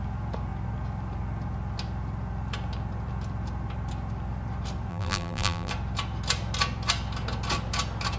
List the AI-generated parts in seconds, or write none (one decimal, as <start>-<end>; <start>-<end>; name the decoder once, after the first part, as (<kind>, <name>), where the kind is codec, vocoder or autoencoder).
4.9-5.7 (vocoder, BigVGAN v2)